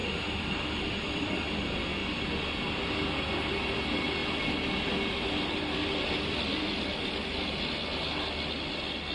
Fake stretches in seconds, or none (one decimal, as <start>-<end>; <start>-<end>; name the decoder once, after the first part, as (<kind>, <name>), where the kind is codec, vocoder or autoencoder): 0.0-1.5 (vocoder, BigVGAN v2)